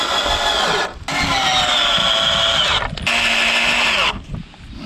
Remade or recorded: recorded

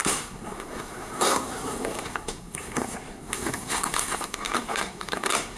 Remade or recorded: remade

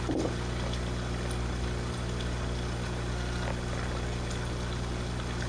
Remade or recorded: recorded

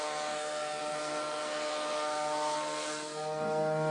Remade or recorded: remade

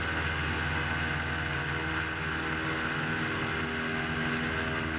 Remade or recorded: recorded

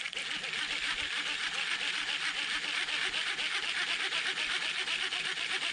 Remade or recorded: recorded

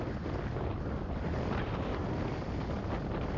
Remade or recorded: recorded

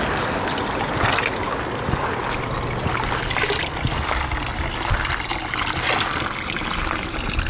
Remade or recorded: recorded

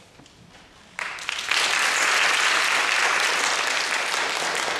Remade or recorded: recorded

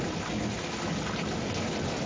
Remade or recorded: recorded